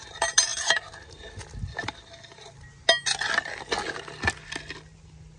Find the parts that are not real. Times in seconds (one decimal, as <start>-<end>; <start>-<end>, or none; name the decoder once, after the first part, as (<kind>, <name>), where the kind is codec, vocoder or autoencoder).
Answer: none